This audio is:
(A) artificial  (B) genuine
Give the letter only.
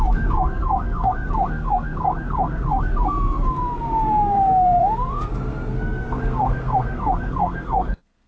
A